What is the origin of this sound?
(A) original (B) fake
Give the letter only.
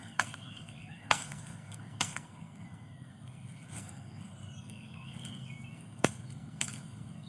B